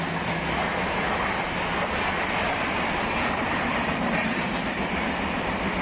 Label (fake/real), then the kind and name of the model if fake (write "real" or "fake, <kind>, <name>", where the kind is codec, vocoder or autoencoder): real